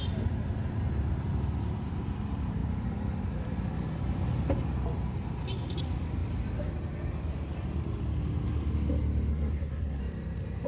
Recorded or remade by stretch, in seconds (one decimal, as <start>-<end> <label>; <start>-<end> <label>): 0.0-9.3 recorded; 9.3-10.0 remade; 10.0-10.7 recorded